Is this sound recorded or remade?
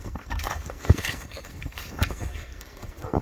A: remade